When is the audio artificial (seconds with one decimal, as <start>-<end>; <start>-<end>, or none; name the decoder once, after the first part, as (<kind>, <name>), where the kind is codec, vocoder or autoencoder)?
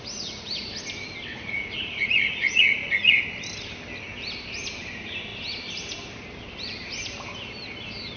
0.0-0.7 (vocoder, Vocos); 1.3-3.2